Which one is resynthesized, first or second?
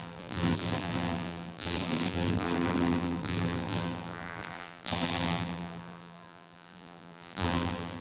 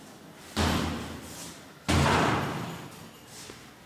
first